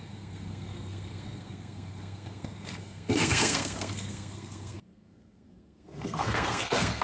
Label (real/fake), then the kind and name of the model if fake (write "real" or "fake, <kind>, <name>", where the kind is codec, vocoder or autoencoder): fake, codec, SNAC